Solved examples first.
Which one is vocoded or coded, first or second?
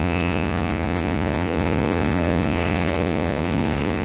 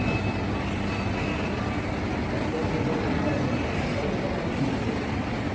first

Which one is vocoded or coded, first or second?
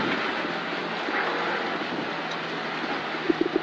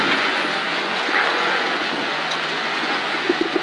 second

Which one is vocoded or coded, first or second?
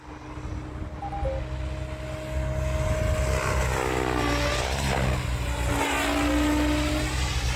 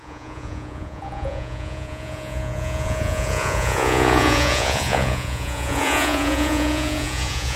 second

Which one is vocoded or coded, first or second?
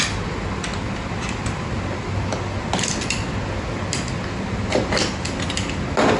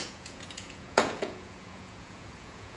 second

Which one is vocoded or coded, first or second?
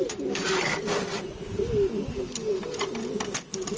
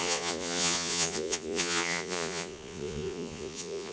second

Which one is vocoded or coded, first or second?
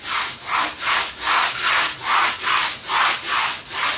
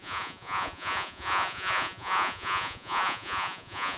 second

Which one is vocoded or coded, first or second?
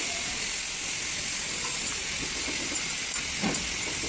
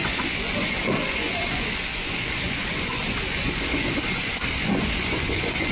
second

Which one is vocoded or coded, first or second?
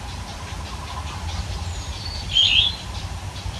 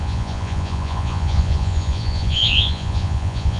second